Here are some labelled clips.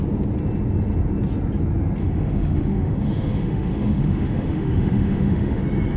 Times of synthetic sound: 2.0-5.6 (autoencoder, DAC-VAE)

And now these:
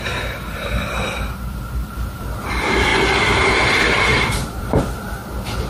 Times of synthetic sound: 0.0-5.7 (vocoder, BigVGAN v2)

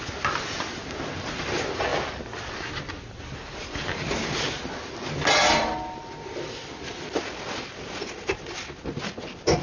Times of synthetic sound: none

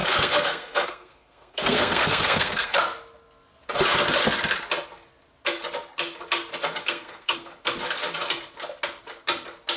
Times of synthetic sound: 0.0-2.8 (codec, SNAC); 6.8-7.5

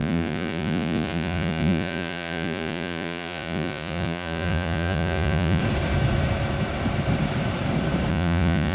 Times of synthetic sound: 0.0-5.6 (vocoder, Vocos); 8.1-8.7

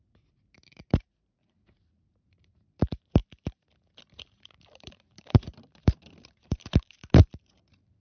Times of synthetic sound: 0.0-3.2 (vocoder, BigVGAN v2); 4.1-8.0

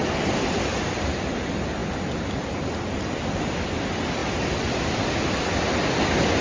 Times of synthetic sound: none

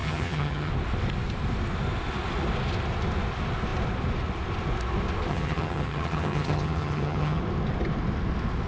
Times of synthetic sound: 0.0-0.7 (vocoder, HiFi-GAN); 5.3-7.4